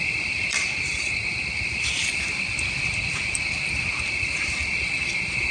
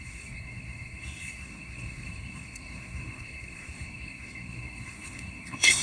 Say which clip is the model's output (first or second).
second